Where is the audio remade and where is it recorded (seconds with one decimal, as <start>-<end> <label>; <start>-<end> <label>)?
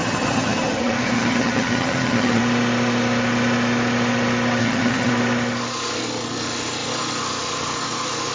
0.0-2.4 remade; 2.4-4.6 recorded; 4.6-5.1 remade; 5.1-8.3 recorded